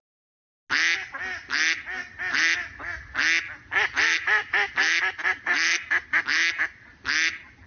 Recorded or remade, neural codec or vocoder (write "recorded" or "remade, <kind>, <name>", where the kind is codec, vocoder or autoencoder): recorded